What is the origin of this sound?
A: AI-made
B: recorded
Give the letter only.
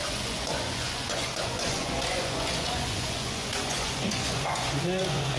A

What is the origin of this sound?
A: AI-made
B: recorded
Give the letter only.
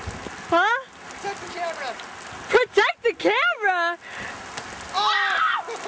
B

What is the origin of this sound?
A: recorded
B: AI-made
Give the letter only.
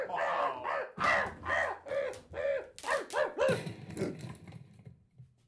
A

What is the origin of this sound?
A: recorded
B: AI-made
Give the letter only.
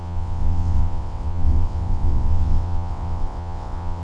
B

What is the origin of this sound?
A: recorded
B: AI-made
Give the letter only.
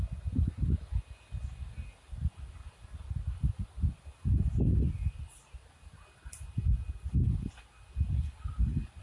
A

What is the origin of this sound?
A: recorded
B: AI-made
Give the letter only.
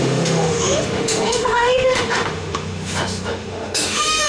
B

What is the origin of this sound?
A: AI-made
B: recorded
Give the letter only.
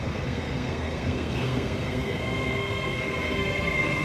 A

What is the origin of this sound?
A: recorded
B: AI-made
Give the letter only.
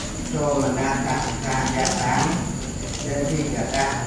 A